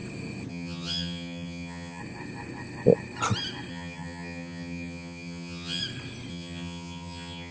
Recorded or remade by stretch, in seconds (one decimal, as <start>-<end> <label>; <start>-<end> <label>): 0.0-0.5 recorded; 0.5-2.0 remade; 2.0-3.7 recorded; 3.7-5.8 remade; 5.8-6.3 recorded; 6.3-7.5 remade